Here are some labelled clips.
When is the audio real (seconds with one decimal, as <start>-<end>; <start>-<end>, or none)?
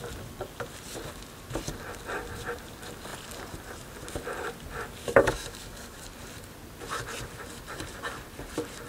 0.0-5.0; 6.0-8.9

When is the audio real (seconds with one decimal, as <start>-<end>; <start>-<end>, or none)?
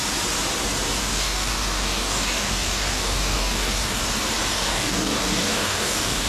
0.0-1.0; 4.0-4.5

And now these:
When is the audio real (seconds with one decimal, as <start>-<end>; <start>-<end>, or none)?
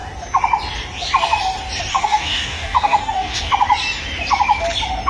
0.0-1.9; 3.5-5.1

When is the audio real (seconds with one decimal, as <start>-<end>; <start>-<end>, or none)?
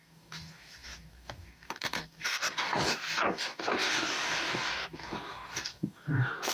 none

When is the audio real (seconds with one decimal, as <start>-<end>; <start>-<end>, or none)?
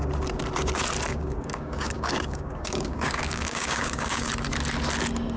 0.0-1.1; 4.3-5.4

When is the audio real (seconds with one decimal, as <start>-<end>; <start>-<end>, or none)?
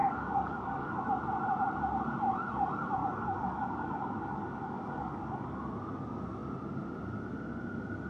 1.0-3.0; 5.6-8.1